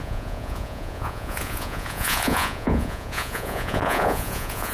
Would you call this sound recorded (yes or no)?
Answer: no